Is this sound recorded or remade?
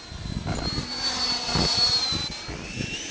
recorded